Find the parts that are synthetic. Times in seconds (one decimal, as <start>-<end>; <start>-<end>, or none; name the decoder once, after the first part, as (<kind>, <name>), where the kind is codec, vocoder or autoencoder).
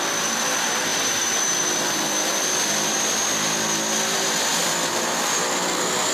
4.5-5.4 (vocoder, BigVGAN v2)